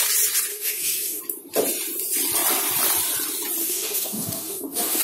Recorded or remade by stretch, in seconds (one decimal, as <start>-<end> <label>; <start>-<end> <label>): 0.0-0.5 recorded; 0.5-1.2 remade; 1.2-3.6 recorded; 3.6-5.0 remade

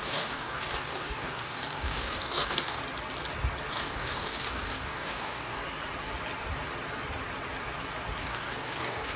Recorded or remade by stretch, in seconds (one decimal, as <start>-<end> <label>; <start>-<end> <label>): 0.0-2.8 remade; 2.8-3.7 recorded; 3.7-5.6 remade; 5.6-8.2 recorded; 8.2-9.2 remade

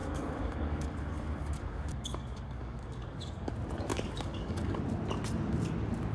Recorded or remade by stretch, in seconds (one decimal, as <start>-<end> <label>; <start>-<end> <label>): 0.0-3.5 remade; 3.5-3.9 recorded; 3.9-4.8 remade; 4.8-6.1 recorded

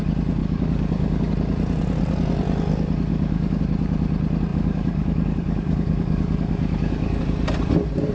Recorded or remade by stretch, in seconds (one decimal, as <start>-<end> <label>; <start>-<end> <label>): 0.0-0.4 recorded; 0.4-1.3 remade; 1.3-3.1 recorded; 3.1-3.6 remade; 3.6-4.5 recorded; 4.5-7.2 remade; 7.2-8.1 recorded